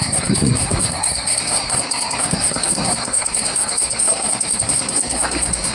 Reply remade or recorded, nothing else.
remade